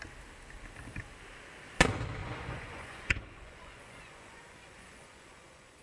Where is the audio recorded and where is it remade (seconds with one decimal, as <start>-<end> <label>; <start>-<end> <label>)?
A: 0.0-2.2 recorded; 2.2-5.8 remade

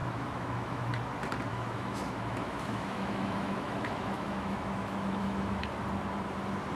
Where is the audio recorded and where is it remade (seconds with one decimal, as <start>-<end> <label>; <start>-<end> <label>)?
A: 0.0-0.9 remade; 0.9-1.5 recorded; 1.5-5.6 remade; 5.6-6.8 recorded

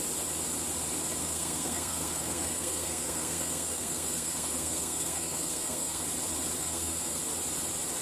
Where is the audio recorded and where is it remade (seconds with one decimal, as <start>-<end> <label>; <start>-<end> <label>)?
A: 0.0-1.2 recorded; 1.2-6.0 remade; 6.0-6.6 recorded; 6.6-7.2 remade; 7.2-8.0 recorded